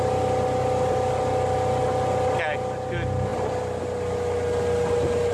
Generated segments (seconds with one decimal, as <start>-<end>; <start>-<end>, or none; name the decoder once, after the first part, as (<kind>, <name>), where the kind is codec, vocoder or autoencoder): 3.3-3.8 (vocoder, BigVGAN v2)